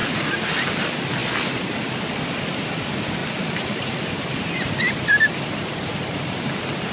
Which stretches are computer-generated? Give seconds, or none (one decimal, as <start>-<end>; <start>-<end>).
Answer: 0.0-0.5